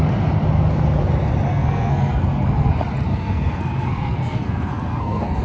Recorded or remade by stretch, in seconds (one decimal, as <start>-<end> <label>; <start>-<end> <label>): 0.0-1.5 recorded; 1.5-2.7 remade; 2.7-3.1 recorded; 3.1-5.4 remade